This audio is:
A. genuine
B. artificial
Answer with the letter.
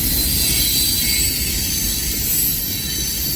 A